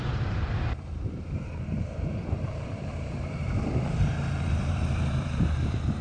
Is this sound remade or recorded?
remade